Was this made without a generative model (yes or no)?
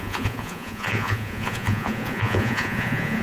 no